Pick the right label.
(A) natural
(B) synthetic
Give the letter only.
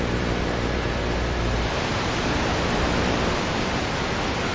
B